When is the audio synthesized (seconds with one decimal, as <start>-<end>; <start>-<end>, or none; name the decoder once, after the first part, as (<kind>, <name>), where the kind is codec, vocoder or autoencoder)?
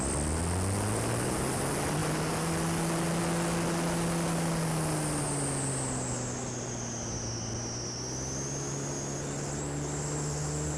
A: none